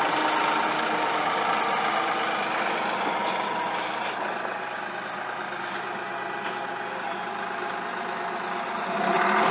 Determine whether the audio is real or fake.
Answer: real